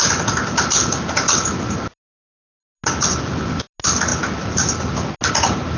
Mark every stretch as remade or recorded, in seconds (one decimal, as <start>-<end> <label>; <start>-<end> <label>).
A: 0.0-5.8 recorded